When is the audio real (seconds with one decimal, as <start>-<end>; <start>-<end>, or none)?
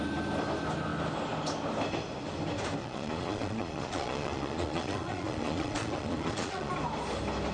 0.0-2.8; 6.7-7.5